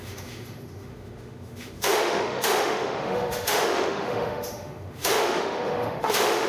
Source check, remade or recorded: remade